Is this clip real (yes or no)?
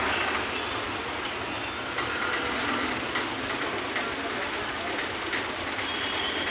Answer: yes